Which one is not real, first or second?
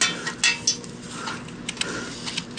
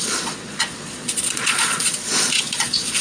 second